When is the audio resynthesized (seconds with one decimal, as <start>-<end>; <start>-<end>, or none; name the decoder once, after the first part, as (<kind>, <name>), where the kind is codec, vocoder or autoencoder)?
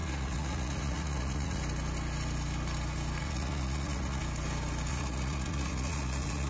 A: 0.0-1.6 (vocoder, Vocos); 3.2-4.2; 4.9-6.5